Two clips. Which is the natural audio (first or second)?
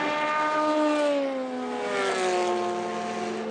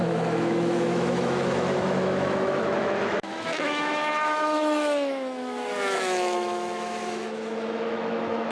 first